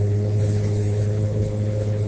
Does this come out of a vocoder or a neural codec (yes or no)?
yes